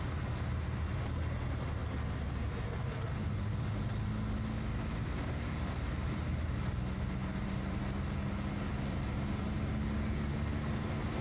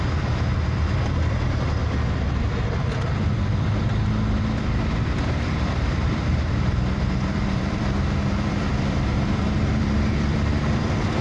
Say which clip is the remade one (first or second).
second